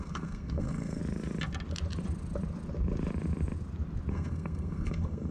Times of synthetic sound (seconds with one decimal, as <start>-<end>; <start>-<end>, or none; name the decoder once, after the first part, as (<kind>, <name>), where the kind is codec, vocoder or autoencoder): 0.0-1.0 (codec, SNAC); 4.1-5.3

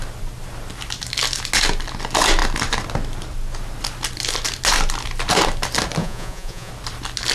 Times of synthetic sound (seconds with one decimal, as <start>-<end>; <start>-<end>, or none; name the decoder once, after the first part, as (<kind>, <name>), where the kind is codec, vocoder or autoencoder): 6.0-6.7 (vocoder, Vocos)

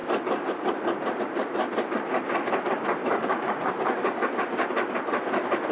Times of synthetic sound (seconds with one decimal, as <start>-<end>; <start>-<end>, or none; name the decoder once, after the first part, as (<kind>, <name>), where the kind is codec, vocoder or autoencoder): 3.0-4.3 (codec, DAC)

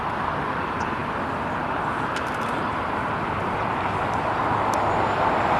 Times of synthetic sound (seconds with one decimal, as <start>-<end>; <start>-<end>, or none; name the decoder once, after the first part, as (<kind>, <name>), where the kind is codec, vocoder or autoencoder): none

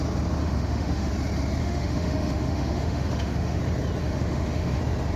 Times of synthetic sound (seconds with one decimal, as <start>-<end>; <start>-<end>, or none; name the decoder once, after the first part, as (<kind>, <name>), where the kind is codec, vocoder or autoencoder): 0.4-1.1 (autoencoder, DAC-VAE); 1.6-3.6; 4.0-4.8

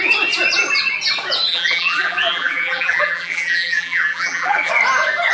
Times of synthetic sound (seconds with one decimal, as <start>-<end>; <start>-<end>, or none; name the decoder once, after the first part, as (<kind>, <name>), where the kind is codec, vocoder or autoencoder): 1.5-4.7 (vocoder, BigVGAN v2)